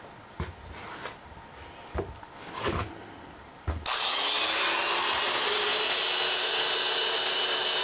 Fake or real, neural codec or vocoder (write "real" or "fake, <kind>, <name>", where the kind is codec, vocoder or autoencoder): real